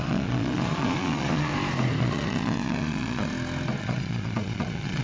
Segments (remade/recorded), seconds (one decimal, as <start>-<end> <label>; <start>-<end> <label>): 0.0-1.5 remade; 1.5-2.0 recorded; 2.0-3.3 remade; 3.3-3.8 recorded; 3.8-5.0 remade